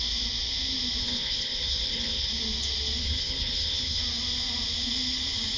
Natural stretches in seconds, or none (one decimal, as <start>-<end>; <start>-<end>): 0.0-1.0; 2.3-3.0; 4.0-5.6